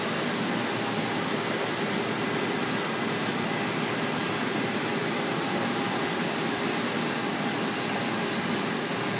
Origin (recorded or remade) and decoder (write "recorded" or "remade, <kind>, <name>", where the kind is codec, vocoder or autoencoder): recorded